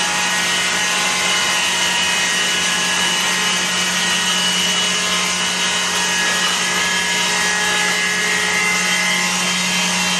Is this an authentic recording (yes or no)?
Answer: yes